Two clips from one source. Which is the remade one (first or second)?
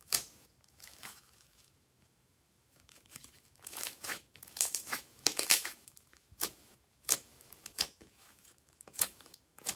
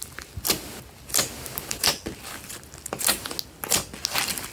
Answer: first